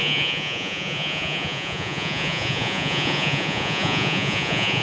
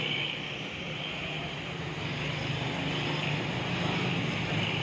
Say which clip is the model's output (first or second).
first